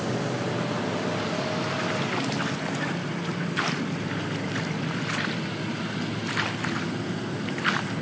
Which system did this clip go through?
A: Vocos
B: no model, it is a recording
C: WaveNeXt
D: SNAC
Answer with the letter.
B